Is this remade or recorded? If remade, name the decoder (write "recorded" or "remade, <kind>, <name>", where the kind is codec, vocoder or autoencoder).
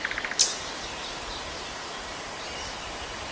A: recorded